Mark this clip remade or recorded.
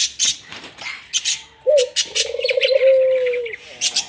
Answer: recorded